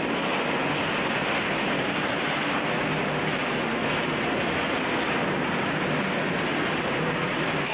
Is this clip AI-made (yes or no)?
no